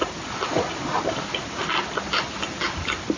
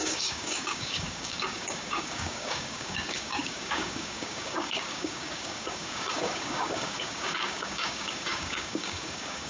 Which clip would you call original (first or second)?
first